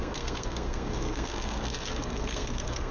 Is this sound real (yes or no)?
no